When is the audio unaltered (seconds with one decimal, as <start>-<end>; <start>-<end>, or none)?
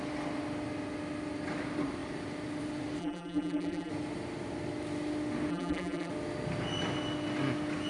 0.0-3.0; 3.9-5.5; 6.1-7.9